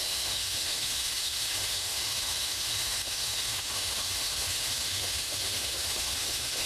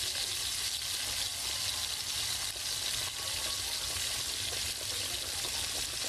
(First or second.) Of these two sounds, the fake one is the first